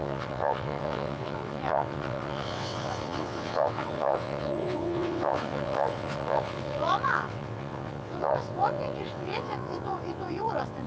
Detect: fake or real fake